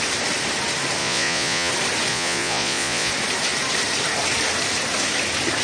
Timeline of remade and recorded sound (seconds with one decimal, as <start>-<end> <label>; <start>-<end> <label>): 0.0-1.0 recorded; 1.0-1.7 remade; 1.7-2.1 recorded; 2.1-3.1 remade; 3.1-5.6 recorded

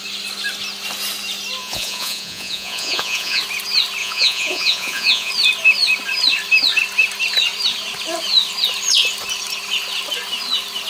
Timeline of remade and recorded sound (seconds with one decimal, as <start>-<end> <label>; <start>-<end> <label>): 0.0-1.6 recorded; 1.6-3.4 remade; 3.4-4.0 recorded; 4.0-5.3 remade; 5.3-10.9 recorded

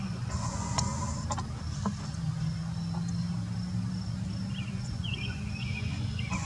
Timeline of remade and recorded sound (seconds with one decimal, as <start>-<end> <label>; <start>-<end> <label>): 0.0-0.9 remade; 0.9-4.7 recorded; 4.7-6.4 remade

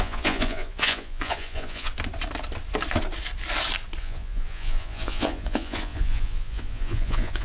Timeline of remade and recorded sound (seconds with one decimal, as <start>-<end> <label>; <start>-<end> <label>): 0.0-1.9 remade; 1.9-4.0 recorded; 4.0-7.4 remade

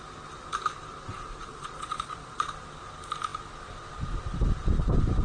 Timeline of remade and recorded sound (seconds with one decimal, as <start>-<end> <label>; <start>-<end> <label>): 0.0-1.5 recorded; 1.5-2.5 remade; 2.5-5.2 recorded

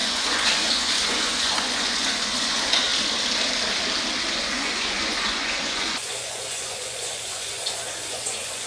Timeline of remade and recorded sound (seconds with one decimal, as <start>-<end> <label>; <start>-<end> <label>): 0.0-2.9 remade; 2.9-4.3 recorded; 4.3-8.7 remade

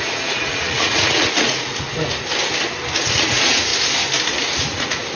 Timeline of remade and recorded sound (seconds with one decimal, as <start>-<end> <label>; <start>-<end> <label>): 0.0-1.9 remade; 1.9-3.0 recorded; 3.0-3.7 remade; 3.7-4.4 recorded; 4.4-5.2 remade